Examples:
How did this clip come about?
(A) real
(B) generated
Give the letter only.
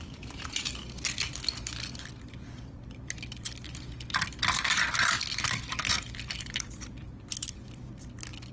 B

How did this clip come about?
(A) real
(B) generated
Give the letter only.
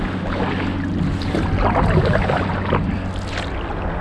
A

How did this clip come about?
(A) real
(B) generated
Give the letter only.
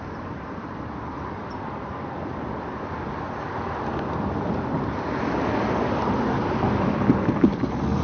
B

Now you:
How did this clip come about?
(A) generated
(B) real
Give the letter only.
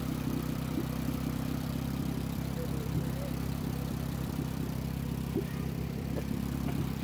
A